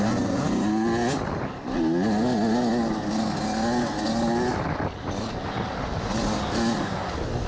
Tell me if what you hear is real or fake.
real